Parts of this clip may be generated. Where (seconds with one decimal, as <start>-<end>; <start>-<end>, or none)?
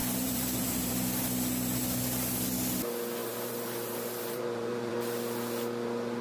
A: 0.0-0.9; 3.2-4.9